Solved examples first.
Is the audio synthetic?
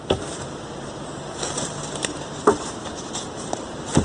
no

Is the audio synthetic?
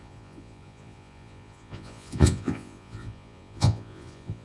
yes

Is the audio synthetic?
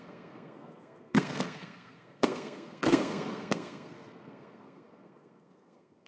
yes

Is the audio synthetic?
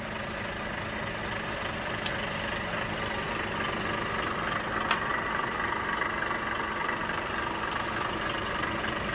no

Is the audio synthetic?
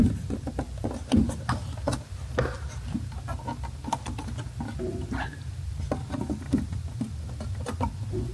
no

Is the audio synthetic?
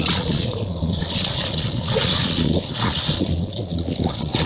yes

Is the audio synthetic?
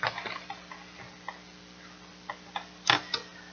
no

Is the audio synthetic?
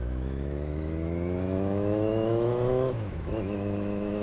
yes